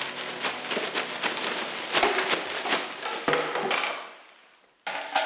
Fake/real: real